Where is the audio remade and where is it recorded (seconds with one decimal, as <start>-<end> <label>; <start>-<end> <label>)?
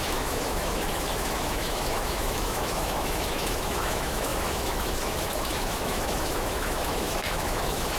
0.0-8.0 remade